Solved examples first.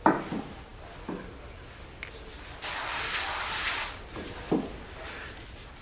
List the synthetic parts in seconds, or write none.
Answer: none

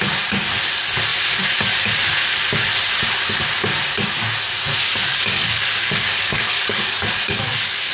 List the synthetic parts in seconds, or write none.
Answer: 5.1-7.9

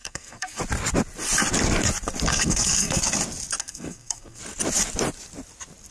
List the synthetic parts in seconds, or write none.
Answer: 0.0-0.6; 2.3-3.0; 3.6-4.4

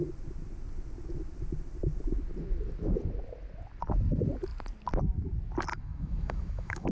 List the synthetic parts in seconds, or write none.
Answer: 5.7-6.9

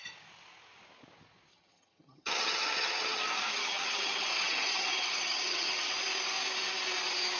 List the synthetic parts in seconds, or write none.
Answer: 1.5-5.9